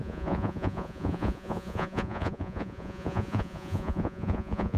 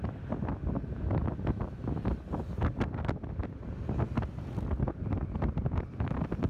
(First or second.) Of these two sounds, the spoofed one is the first